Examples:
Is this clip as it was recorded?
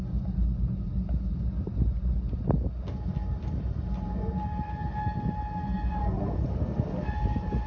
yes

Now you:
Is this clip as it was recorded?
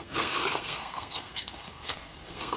no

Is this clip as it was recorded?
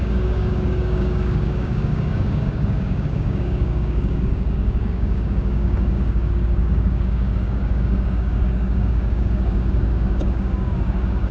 no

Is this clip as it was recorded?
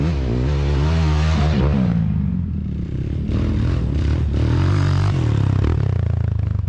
yes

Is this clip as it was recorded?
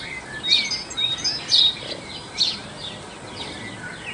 yes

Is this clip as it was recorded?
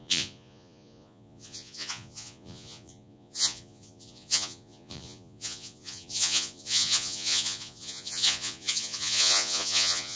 no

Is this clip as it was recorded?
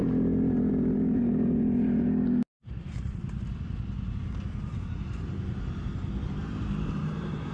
no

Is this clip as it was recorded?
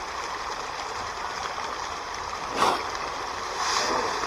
yes